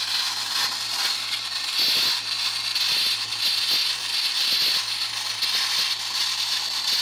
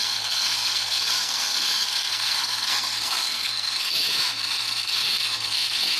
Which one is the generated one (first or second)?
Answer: second